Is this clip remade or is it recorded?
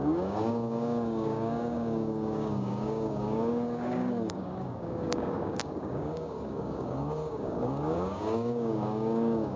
remade